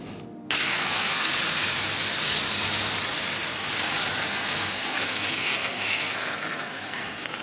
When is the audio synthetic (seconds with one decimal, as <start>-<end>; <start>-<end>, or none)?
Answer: 0.7-1.3; 4.2-7.4